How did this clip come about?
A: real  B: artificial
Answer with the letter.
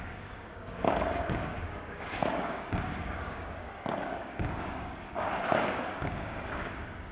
B